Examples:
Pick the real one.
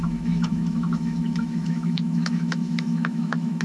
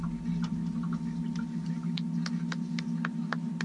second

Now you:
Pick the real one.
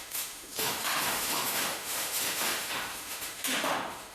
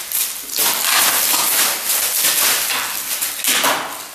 second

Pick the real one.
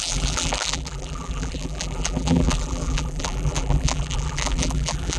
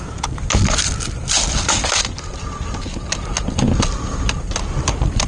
second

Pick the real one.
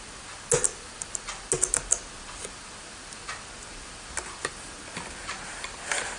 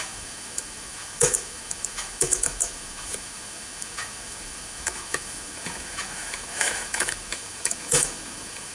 first